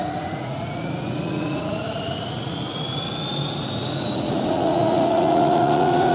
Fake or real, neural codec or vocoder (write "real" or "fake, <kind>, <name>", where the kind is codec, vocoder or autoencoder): fake, vocoder, Vocos